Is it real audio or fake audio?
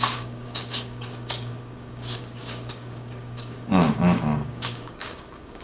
fake